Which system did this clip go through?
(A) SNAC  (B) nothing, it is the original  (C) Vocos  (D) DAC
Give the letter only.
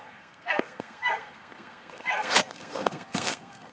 A